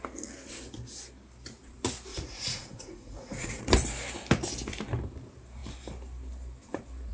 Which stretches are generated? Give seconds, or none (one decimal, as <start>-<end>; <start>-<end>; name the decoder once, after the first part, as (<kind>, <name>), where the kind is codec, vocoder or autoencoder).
2.1-3.6 (vocoder, Vocos)